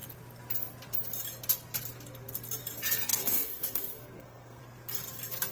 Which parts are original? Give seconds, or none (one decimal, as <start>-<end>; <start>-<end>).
0.0-3.1; 4.6-5.5